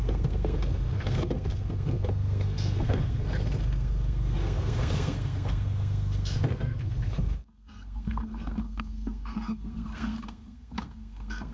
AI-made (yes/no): yes